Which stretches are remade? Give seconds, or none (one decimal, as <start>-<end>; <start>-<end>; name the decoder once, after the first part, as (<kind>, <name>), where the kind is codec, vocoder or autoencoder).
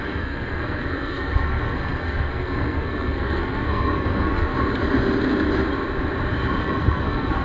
0.0-4.5 (codec, SNAC); 6.6-7.4